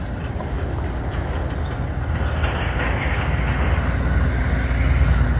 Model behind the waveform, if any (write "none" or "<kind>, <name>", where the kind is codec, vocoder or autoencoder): none